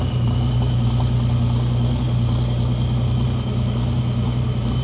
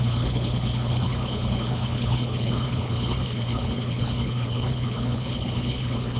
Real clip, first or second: first